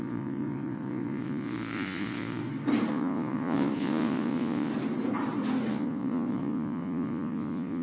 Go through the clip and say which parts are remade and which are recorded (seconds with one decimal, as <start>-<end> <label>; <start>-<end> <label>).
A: 0.0-2.4 remade; 2.4-2.9 recorded; 2.9-4.7 remade; 4.7-5.7 recorded; 5.7-7.8 remade